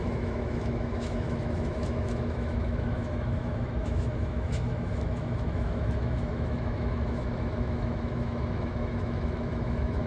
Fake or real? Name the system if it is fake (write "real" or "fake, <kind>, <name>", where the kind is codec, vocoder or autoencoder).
fake, autoencoder, DAC-VAE